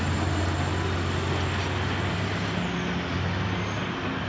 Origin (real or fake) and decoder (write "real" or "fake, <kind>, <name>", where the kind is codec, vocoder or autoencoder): real